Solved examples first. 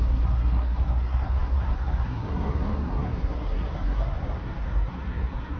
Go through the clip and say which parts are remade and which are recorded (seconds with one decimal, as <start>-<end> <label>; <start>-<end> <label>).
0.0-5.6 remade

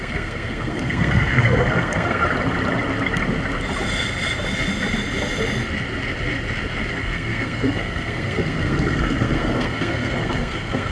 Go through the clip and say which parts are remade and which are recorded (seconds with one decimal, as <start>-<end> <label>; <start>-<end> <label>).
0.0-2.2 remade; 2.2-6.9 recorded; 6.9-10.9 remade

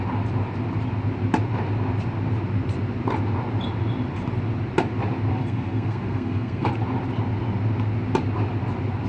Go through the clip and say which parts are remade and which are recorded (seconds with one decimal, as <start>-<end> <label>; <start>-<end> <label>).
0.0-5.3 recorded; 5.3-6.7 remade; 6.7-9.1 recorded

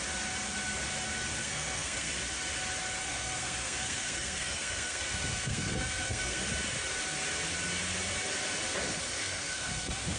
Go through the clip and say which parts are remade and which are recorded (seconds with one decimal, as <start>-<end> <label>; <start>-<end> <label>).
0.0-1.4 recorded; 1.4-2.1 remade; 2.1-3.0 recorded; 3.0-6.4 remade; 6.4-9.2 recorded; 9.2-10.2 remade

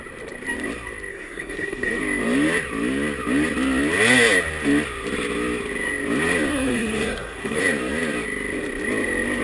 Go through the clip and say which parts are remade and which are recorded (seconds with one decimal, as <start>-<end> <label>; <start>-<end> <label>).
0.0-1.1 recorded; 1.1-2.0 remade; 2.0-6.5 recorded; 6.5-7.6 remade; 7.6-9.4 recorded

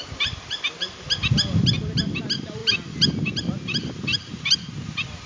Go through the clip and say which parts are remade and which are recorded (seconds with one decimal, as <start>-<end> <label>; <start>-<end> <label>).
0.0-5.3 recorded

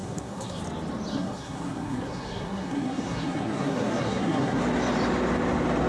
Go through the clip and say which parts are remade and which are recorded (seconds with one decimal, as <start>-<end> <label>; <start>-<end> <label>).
0.0-0.6 remade; 0.6-1.1 recorded; 1.1-4.6 remade; 4.6-5.9 recorded

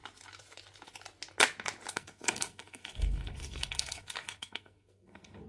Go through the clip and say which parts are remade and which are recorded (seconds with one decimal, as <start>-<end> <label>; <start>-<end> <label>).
0.0-1.9 recorded; 1.9-5.5 remade